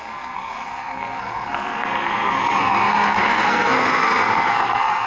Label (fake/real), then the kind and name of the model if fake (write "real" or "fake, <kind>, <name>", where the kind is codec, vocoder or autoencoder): fake, codec, SNAC